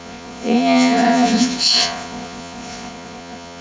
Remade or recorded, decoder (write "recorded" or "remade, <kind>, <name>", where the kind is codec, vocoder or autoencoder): remade, vocoder, Vocos